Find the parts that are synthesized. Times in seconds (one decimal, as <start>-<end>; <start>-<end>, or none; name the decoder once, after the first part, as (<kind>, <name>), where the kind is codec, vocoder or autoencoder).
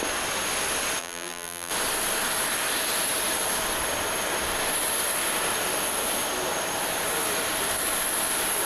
1.0-1.7 (vocoder, BigVGAN v2)